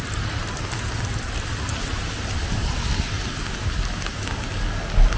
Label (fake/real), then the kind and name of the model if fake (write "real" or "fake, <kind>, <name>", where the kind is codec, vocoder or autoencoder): real